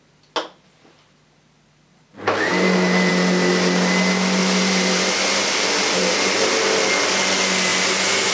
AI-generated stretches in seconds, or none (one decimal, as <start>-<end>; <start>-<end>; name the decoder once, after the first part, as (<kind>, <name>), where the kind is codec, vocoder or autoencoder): 4.4-6.5 (vocoder, BigVGAN v2)